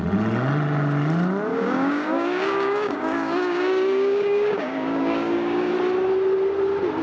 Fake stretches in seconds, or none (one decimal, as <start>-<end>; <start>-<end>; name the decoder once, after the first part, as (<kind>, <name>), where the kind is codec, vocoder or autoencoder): 1.5-5.7 (codec, DAC)